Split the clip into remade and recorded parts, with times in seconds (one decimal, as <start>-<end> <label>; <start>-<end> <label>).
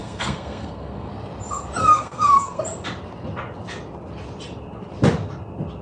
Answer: 0.0-1.1 remade; 1.1-1.8 recorded; 1.8-2.6 remade; 2.6-5.8 recorded